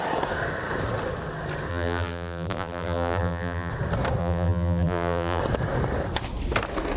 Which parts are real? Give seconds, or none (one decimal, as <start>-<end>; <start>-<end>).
0.0-1.7; 3.7-4.2; 5.4-7.0